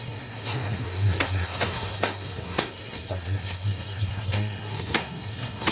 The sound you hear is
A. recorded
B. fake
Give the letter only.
B